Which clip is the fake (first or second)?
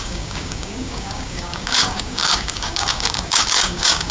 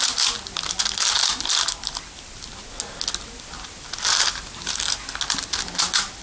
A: first